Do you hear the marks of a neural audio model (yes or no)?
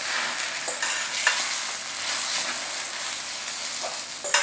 no